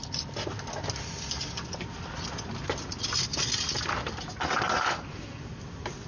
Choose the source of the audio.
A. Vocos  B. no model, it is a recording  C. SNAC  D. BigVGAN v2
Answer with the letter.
B